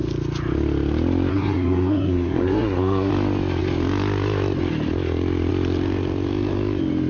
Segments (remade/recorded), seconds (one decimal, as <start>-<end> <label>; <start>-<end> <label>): 0.0-1.3 recorded; 1.3-3.1 remade; 3.1-7.1 recorded